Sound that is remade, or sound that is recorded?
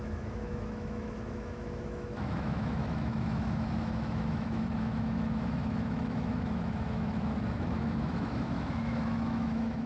remade